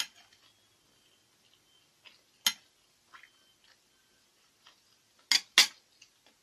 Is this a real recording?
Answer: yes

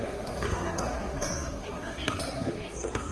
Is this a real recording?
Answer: no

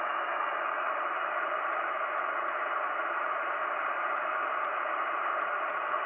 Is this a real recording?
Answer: no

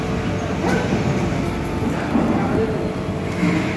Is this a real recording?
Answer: yes